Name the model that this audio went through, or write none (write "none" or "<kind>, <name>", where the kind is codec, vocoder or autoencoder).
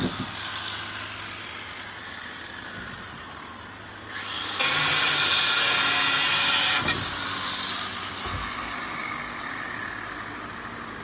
none